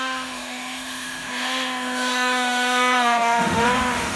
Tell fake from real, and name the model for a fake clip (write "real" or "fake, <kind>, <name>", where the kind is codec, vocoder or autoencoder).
fake, autoencoder, DAC-VAE